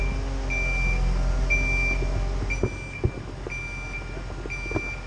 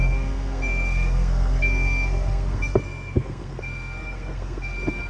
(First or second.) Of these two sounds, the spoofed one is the second